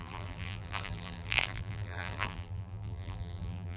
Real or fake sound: fake